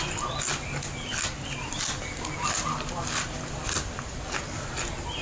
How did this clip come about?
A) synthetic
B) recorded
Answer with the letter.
B